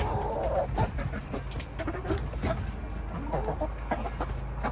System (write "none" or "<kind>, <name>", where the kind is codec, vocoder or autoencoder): none